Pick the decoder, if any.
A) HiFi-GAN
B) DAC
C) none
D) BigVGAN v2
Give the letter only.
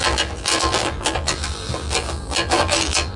D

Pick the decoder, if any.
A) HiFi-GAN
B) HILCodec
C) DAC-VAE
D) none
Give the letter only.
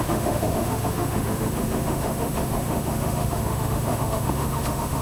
C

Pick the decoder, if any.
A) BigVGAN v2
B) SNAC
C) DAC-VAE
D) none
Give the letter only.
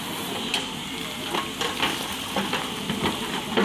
D